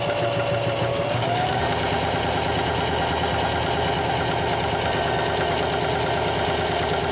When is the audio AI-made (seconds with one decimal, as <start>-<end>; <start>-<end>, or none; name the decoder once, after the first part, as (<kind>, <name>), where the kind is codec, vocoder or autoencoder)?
0.9-1.6 (codec, DAC)

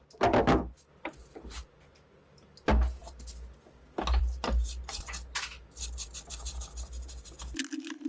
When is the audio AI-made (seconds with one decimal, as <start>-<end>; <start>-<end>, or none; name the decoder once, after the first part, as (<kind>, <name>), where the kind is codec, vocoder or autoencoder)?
none

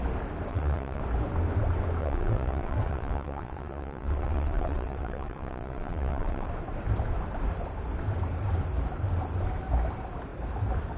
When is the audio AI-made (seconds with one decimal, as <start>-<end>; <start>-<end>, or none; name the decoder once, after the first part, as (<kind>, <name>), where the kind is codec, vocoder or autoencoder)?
0.5-1.0 (vocoder, WaveNeXt); 2.0-6.5

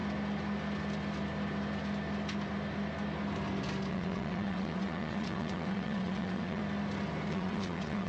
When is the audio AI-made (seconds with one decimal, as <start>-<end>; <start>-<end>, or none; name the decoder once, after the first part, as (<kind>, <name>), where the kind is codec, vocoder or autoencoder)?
3.9-6.6 (vocoder, WaveNeXt); 7.3-8.1

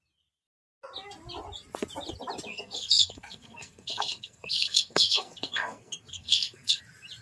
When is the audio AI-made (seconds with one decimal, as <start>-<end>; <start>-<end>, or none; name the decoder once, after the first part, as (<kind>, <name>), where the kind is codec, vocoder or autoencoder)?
2.5-6.8 (codec, SNAC)